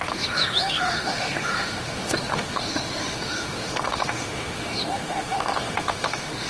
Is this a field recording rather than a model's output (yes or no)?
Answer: no